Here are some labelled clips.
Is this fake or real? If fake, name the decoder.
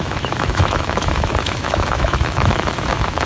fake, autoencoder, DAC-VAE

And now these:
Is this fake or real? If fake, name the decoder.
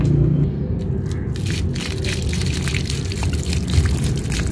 real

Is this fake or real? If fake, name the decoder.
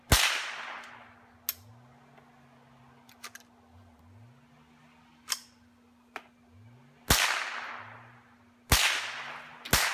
real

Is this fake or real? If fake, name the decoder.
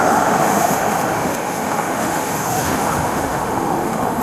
fake, autoencoder, DAC-VAE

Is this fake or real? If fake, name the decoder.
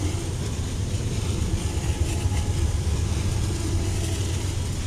real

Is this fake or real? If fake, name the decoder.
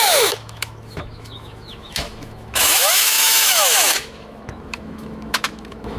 fake, autoencoder, DAC-VAE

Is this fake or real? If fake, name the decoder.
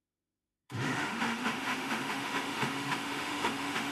fake, autoencoder, DAC-VAE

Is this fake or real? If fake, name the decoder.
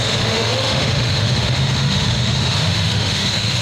fake, autoencoder, DAC-VAE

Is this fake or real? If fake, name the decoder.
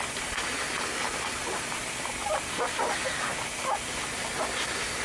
real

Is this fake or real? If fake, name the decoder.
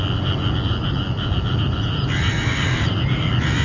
real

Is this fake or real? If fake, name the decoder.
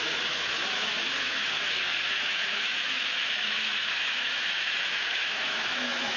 fake, autoencoder, DAC-VAE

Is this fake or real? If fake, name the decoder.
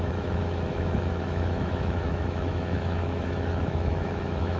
fake, autoencoder, DAC-VAE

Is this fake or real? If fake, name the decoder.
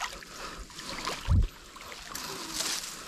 real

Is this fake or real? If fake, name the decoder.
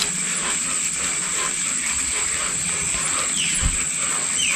real